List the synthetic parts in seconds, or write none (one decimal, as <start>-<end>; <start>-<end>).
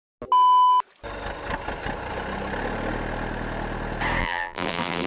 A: 4.2-5.1